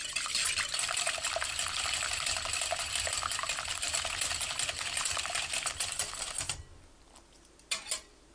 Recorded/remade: recorded